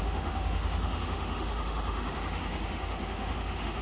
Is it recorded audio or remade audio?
remade